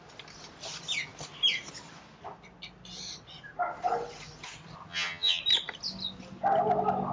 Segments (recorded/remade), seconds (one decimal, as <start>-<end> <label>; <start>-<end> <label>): 0.0-4.9 recorded; 4.9-5.4 remade; 5.4-7.1 recorded